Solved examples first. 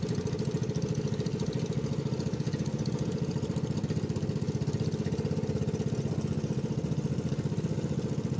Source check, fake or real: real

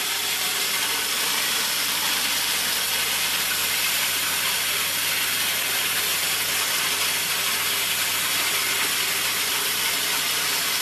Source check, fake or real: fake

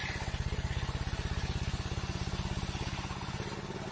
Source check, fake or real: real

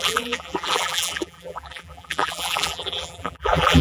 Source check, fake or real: fake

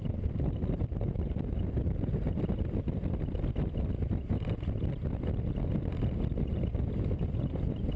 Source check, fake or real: real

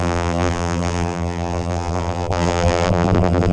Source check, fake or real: fake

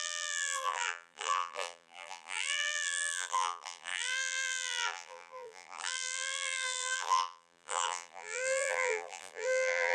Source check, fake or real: fake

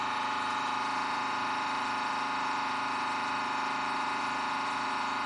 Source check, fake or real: fake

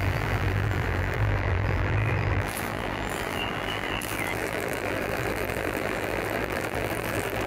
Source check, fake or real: fake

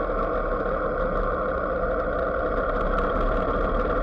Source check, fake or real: real